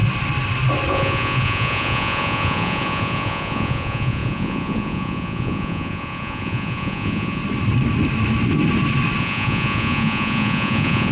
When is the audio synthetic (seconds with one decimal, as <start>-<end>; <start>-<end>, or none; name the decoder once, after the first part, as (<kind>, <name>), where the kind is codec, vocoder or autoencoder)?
0.9-7.4 (vocoder, Vocos); 9.2-11.1